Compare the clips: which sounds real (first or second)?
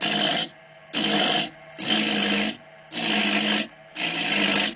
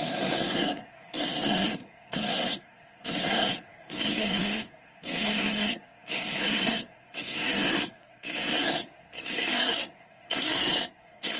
first